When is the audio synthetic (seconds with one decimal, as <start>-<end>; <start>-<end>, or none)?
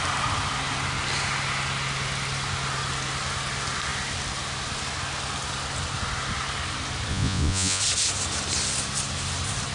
7.1-7.8